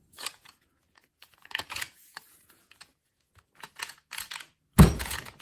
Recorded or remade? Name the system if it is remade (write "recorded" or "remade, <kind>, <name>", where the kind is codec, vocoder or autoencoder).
remade, vocoder, Vocos